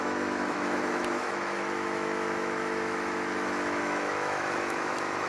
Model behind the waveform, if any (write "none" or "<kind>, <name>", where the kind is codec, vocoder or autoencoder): autoencoder, DAC-VAE